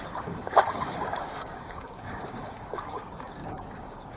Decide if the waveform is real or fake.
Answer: fake